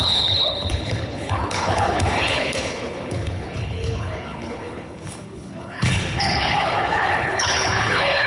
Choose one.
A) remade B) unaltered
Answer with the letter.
A